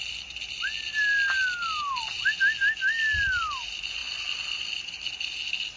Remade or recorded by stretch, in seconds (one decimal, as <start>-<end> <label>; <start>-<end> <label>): 0.0-4.0 recorded; 4.0-4.8 remade; 4.8-5.8 recorded